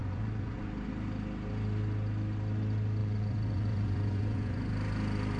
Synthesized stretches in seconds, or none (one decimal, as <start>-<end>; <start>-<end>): 0.0-0.6; 3.0-4.7

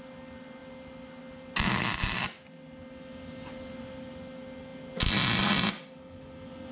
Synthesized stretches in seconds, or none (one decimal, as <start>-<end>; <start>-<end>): none

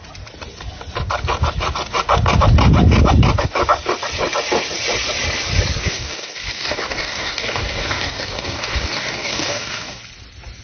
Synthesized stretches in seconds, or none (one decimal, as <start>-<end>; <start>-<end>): 5.8-10.0

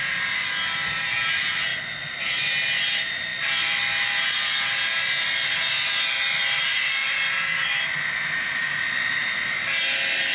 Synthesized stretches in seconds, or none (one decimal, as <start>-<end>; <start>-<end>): none

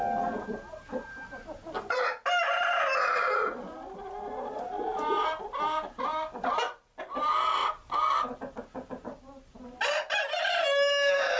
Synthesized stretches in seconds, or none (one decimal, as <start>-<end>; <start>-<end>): none